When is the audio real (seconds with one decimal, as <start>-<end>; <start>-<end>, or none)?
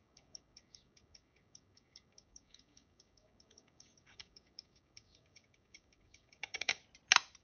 6.8-7.4